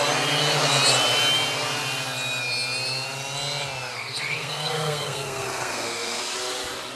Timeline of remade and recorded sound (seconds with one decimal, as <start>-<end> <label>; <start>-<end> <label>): 0.0-3.9 recorded; 3.9-6.2 remade; 6.2-7.0 recorded